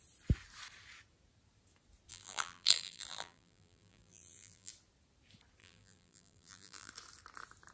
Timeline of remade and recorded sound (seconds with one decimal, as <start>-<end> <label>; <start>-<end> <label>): 0.0-2.1 recorded; 2.1-4.7 remade; 4.7-5.6 recorded; 5.6-6.9 remade; 6.9-7.7 recorded